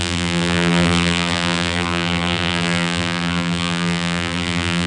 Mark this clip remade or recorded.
remade